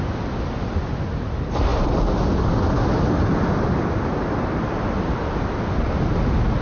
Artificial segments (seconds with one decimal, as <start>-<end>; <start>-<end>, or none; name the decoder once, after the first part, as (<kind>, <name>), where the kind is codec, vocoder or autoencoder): none